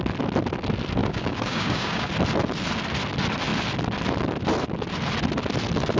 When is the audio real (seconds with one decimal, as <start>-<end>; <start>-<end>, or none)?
0.0-1.0; 2.1-6.0